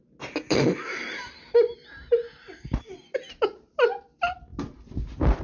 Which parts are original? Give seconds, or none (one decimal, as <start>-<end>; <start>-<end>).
0.0-5.4